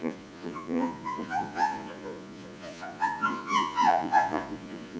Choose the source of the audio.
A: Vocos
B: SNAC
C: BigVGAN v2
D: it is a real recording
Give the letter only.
A